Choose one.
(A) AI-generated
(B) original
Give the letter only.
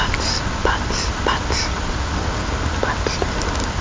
B